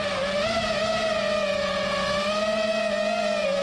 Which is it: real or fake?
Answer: real